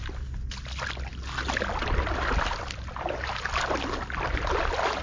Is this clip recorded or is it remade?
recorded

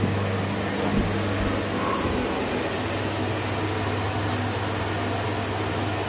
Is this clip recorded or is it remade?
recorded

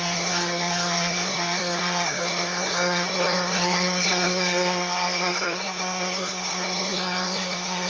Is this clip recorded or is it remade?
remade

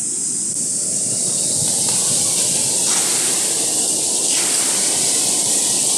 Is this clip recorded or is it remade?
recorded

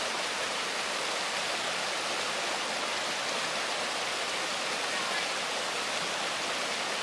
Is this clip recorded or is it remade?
recorded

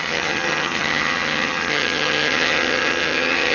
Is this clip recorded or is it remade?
remade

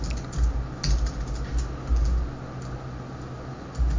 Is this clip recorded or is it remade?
recorded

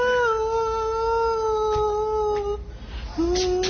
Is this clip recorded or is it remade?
recorded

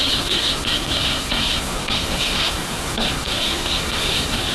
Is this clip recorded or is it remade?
remade